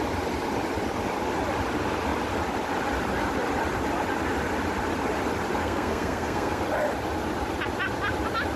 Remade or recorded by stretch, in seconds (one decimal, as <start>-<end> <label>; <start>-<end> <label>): 0.0-5.6 recorded; 5.6-6.6 remade; 6.6-8.6 recorded